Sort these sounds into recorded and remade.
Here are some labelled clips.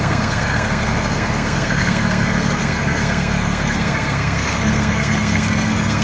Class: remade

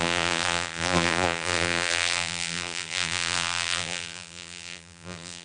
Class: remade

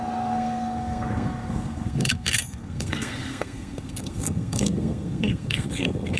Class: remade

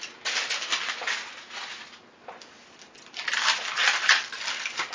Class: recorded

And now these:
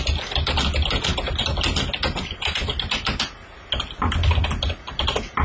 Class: recorded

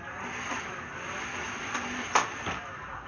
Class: recorded